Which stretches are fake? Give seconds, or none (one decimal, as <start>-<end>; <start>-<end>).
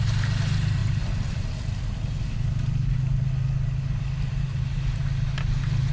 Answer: none